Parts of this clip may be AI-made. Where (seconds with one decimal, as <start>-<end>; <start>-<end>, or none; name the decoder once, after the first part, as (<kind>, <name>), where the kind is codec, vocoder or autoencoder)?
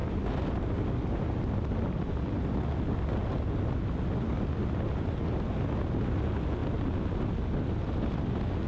none